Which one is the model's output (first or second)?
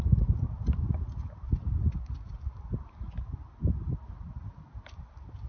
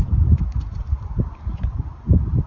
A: second